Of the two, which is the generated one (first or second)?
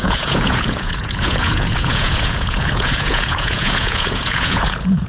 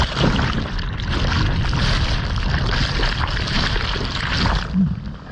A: first